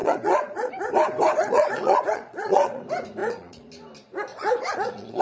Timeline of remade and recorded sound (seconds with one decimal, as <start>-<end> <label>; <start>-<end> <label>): 0.0-0.7 remade; 0.7-1.4 recorded; 1.4-2.8 remade; 2.8-3.2 recorded; 3.2-3.7 remade; 3.7-4.3 recorded; 4.3-5.2 remade